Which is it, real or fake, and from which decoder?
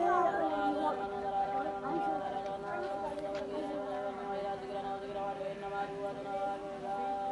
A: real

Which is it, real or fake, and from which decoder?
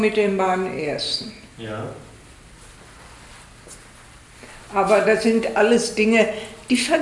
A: real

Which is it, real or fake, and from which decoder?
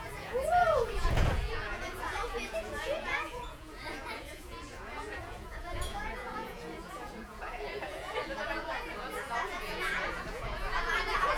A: fake, vocoder, Vocos